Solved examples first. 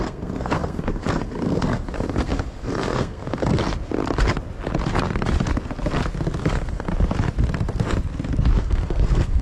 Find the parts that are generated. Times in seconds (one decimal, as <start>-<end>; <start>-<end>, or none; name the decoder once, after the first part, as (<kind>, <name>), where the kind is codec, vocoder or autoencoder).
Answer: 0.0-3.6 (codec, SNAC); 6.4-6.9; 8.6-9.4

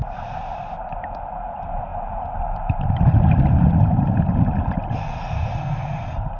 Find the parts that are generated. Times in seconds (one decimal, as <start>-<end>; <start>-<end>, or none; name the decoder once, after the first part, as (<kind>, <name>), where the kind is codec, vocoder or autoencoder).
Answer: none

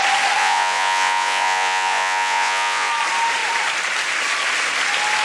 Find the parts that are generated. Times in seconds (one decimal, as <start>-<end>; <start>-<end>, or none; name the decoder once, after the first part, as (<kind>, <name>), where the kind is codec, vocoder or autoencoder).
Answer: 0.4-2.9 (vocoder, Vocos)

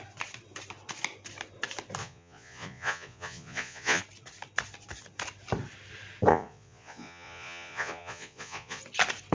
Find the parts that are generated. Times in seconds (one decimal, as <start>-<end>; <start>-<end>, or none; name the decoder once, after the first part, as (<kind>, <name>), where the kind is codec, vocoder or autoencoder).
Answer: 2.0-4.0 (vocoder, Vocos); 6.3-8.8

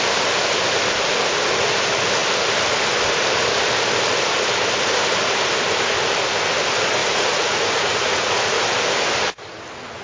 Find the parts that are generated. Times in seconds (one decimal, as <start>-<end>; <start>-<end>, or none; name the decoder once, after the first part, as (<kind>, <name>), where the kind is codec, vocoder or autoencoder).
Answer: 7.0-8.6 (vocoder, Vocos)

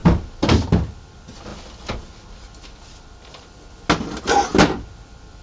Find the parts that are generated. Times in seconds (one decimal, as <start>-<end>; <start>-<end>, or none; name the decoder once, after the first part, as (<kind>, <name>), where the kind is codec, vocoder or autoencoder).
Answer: none

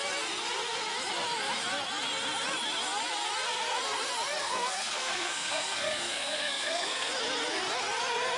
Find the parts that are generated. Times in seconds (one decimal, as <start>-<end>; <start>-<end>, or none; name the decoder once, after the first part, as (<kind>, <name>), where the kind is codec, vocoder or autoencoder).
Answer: 4.4-7.1 (codec, SNAC)